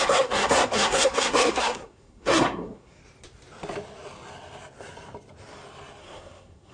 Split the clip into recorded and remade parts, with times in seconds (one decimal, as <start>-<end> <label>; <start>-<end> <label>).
0.0-3.0 remade; 3.0-6.0 recorded; 6.0-6.7 remade